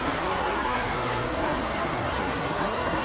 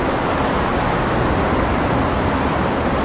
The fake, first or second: first